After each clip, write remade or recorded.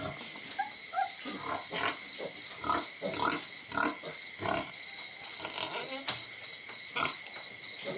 recorded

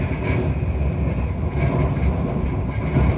recorded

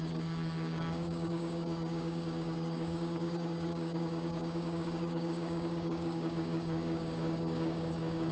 remade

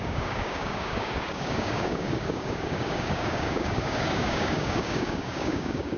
remade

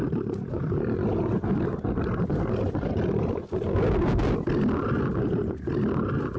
recorded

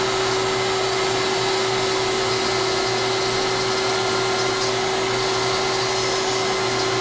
recorded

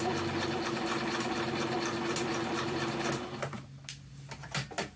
recorded